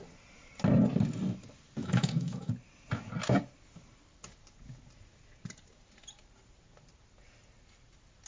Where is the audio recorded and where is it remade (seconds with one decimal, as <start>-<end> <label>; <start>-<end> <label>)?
0.0-1.8 recorded; 1.8-2.5 remade; 2.5-8.3 recorded